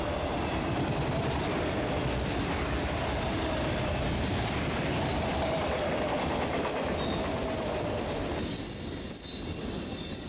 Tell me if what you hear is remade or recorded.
recorded